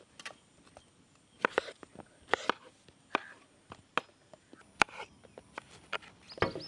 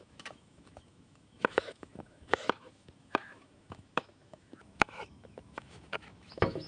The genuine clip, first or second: first